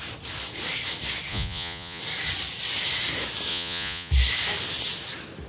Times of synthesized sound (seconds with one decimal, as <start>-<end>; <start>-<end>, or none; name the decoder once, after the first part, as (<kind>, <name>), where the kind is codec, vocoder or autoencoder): 1.3-2.0 (vocoder, Vocos); 3.5-4.1